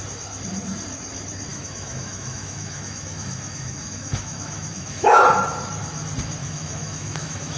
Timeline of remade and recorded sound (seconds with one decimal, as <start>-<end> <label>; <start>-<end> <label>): 0.0-1.5 recorded; 1.5-5.2 remade; 5.2-6.4 recorded; 6.4-7.6 remade